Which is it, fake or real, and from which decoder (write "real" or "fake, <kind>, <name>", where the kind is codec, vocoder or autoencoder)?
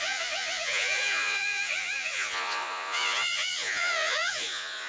fake, vocoder, Vocos